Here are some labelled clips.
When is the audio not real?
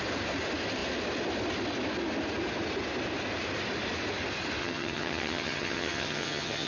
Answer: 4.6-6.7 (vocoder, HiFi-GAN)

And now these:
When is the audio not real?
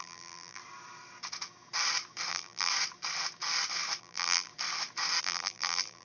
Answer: 0.0-0.6 (vocoder, BigVGAN v2); 2.3-2.7; 4.0-4.5; 5.2-6.0